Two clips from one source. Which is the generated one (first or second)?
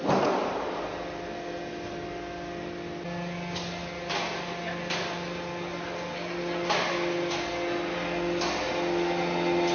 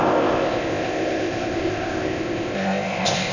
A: second